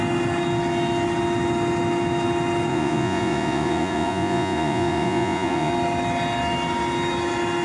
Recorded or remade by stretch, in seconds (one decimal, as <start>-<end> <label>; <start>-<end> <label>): 0.0-2.7 recorded; 2.7-5.7 remade; 5.7-7.6 recorded